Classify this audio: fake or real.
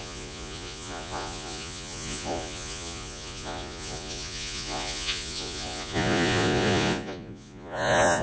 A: fake